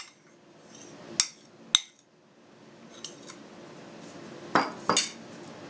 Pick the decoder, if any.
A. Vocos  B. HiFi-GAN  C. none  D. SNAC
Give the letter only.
C